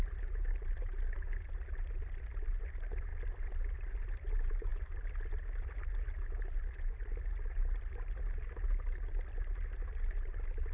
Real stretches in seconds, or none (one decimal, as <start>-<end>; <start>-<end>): 0.0-10.7

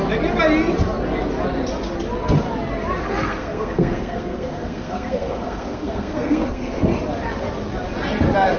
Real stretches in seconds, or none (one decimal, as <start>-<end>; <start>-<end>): 0.0-3.0; 6.8-8.6

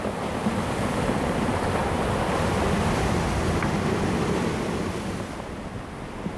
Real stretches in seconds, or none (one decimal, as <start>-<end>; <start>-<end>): 0.0-6.4

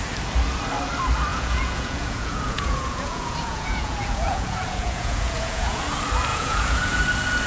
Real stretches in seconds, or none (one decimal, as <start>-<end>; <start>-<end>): 0.0-1.3; 5.8-6.3; 7.0-7.5